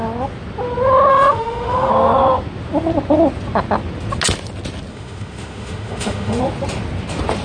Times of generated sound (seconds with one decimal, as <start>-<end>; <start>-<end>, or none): 1.1-1.9; 4.9-6.4